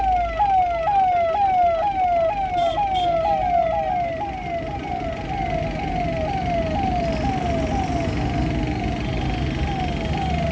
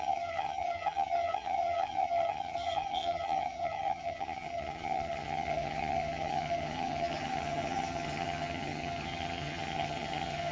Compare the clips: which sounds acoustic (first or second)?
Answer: first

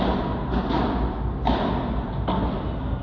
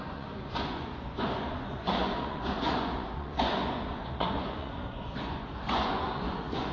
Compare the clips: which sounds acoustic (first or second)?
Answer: first